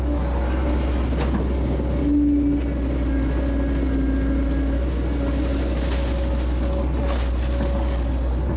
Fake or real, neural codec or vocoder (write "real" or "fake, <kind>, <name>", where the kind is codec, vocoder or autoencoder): real